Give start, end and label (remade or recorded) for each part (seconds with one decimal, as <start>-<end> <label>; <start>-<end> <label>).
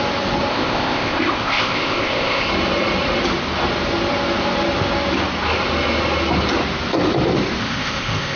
0.0-0.5 recorded; 0.5-2.5 remade; 2.5-7.6 recorded; 7.6-8.4 remade